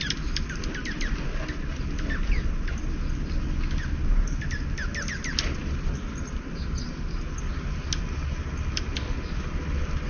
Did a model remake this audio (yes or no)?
no